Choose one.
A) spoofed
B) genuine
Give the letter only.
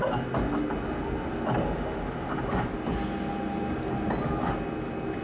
B